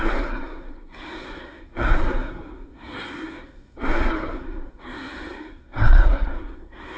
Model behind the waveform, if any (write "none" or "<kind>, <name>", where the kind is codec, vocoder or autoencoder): codec, SNAC